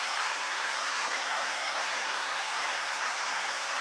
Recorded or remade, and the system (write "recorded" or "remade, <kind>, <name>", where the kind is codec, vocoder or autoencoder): remade, codec, SNAC